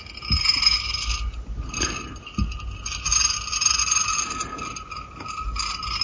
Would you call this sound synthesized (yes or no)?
no